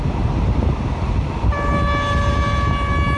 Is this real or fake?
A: real